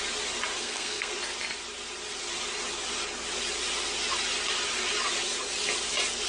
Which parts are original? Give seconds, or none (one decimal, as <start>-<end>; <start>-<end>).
0.0-0.6; 1.1-6.3